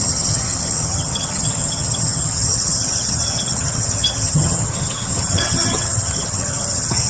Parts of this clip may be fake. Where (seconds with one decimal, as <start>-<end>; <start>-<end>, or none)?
0.0-7.1